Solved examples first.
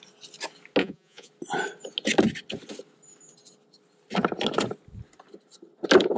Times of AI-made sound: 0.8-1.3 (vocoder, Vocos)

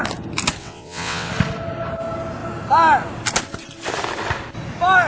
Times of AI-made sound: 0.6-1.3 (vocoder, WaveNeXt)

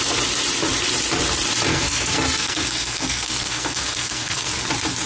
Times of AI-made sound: 1.7-4.5 (codec, SNAC)